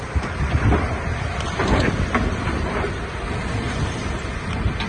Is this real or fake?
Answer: real